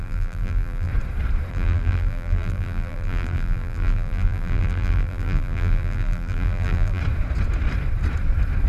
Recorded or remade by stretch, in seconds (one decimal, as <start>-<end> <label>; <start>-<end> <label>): 0.0-0.9 remade; 0.9-1.5 recorded; 1.5-7.0 remade; 7.0-8.7 recorded